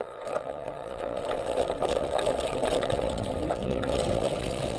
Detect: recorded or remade remade